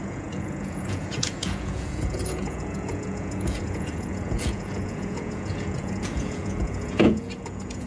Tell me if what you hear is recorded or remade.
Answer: remade